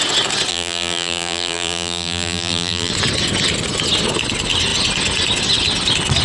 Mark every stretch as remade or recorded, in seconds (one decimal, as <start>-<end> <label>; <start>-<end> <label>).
0.0-0.5 recorded; 0.5-2.9 remade; 2.9-6.2 recorded